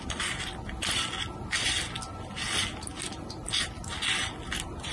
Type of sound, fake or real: real